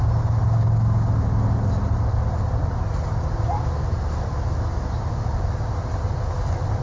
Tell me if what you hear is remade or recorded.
recorded